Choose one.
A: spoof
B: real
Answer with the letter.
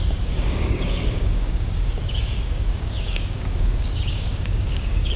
A